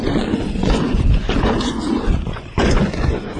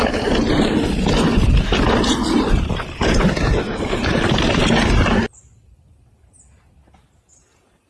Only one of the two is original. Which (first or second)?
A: second